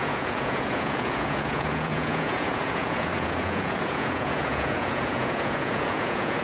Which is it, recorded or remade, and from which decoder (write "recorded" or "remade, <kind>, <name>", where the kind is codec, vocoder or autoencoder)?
remade, vocoder, Vocos